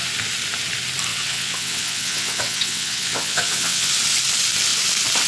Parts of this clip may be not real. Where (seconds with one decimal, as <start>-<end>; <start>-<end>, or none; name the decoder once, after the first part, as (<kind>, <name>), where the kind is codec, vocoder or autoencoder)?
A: 1.1-3.9 (vocoder, WaveNeXt)